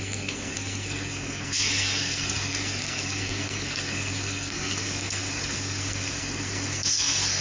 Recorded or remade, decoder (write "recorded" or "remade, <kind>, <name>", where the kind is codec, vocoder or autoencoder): remade, codec, SNAC